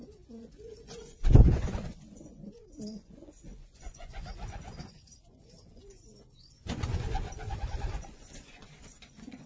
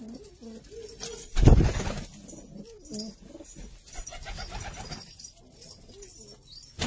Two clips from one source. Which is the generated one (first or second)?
first